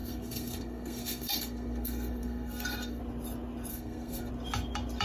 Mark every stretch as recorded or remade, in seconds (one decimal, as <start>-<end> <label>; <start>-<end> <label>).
0.0-3.0 remade; 3.0-3.7 recorded; 3.7-4.3 remade; 4.3-5.0 recorded